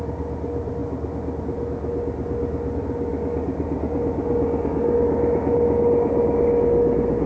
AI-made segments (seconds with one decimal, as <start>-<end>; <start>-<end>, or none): none

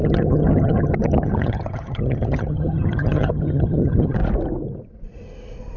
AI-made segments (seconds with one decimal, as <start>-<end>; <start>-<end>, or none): 0.0-4.2

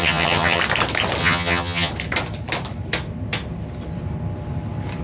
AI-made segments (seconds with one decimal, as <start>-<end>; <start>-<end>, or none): 0.0-0.6; 1.2-1.9

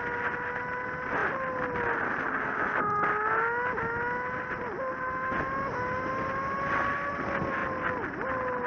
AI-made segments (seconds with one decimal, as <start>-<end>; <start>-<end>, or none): none

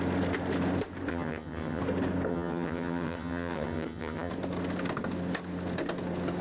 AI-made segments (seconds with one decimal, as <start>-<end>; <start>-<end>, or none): 1.1-1.8; 2.3-4.3

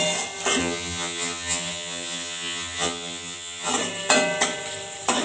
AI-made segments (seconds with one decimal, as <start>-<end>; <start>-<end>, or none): 0.6-3.7